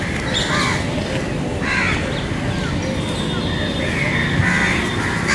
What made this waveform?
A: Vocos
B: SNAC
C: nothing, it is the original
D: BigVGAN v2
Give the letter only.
C